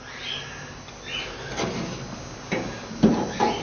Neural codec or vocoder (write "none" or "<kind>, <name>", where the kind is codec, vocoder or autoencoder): none